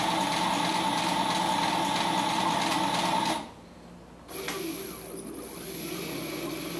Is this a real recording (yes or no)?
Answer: yes